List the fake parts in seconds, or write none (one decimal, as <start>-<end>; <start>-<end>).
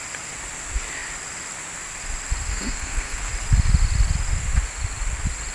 2.5-3.3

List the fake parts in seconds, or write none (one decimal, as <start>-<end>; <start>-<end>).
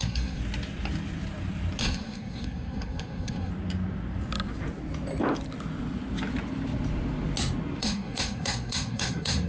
0.0-0.4; 1.8-3.5; 7.8-9.5